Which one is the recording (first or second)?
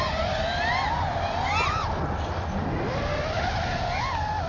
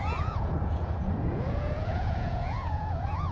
first